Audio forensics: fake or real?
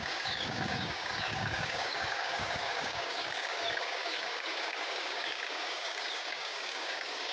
fake